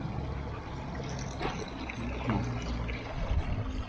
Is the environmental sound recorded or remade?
recorded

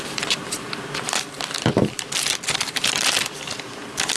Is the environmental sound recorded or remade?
remade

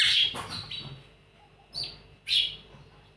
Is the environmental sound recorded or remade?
recorded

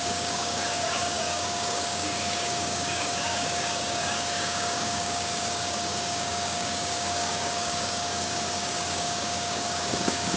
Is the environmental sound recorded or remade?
remade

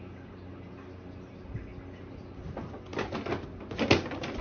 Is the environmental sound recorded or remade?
recorded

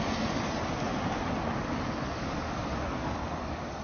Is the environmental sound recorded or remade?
recorded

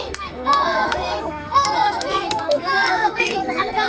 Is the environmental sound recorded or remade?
remade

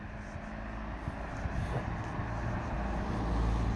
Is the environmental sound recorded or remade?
recorded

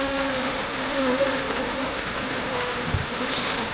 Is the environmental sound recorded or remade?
remade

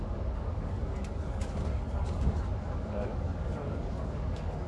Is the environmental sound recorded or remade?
remade